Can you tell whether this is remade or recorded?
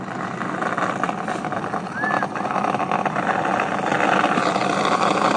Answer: recorded